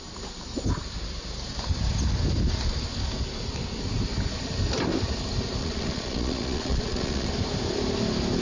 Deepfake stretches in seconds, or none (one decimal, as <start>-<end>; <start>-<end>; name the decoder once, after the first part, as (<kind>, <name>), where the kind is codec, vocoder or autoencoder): 5.6-7.3 (vocoder, Vocos)

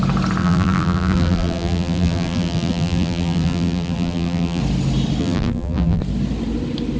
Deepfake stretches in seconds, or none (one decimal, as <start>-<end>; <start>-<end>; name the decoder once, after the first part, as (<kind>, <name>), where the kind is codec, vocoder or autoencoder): 0.4-4.6 (vocoder, BigVGAN v2); 5.2-6.0

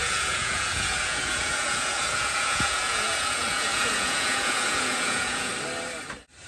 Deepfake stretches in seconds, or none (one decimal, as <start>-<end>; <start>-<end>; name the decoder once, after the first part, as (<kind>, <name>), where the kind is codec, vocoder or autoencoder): 0.0-5.5 (vocoder, Vocos)

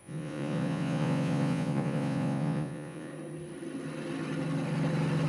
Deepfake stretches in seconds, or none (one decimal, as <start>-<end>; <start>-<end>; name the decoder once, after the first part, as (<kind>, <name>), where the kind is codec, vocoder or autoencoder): 0.0-3.1 (vocoder, Vocos)

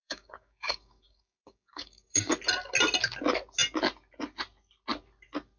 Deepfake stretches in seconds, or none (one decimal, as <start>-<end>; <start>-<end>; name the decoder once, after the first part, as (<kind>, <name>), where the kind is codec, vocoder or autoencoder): 0.0-2.3 (codec, DAC)

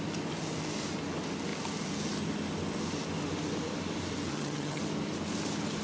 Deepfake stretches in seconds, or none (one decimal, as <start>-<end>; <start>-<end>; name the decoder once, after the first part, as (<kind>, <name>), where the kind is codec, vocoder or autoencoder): 4.3-4.8 (vocoder, HiFi-GAN)

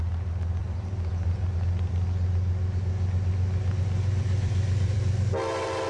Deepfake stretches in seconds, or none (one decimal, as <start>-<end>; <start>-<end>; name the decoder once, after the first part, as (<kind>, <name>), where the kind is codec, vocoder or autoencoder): 0.6-1.9 (vocoder, BigVGAN v2); 4.1-5.0

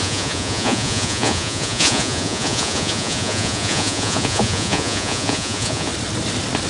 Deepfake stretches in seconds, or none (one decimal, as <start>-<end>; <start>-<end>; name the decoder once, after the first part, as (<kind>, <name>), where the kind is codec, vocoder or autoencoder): 0.0-5.9 (vocoder, Vocos)